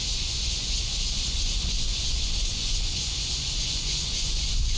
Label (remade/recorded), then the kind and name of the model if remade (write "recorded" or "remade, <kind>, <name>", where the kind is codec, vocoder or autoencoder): remade, vocoder, Vocos